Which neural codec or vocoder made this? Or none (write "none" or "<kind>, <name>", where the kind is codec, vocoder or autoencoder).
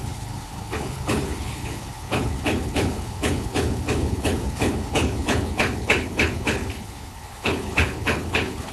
codec, HILCodec